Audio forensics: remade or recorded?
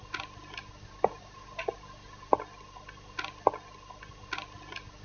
recorded